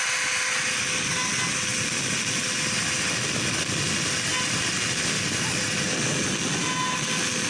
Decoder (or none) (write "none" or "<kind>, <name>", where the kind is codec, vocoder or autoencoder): none